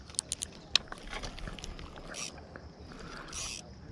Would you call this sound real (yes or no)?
yes